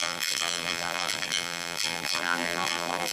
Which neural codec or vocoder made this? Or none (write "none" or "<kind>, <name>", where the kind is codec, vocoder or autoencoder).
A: vocoder, BigVGAN v2